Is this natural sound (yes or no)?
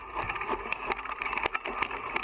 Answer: yes